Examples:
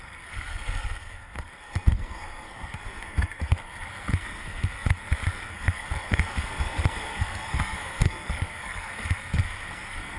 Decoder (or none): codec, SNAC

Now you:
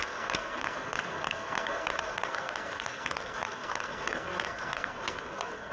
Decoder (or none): codec, SNAC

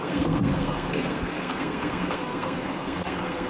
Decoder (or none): codec, SNAC